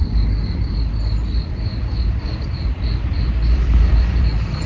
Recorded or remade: remade